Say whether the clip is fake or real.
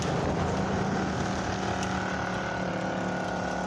real